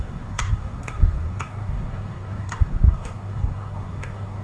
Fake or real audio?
fake